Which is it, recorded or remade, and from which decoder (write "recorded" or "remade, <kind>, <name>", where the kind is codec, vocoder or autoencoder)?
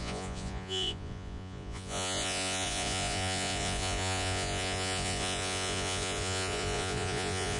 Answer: remade, vocoder, Vocos